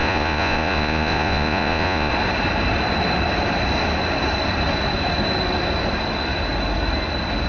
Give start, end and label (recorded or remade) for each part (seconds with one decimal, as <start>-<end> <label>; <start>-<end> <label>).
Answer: 0.0-2.1 remade; 2.1-7.5 recorded